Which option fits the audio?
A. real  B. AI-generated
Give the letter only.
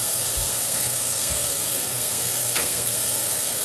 B